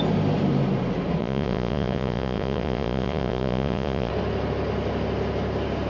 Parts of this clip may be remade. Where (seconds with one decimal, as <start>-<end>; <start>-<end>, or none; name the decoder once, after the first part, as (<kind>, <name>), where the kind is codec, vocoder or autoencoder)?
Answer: 1.2-4.1 (vocoder, Vocos)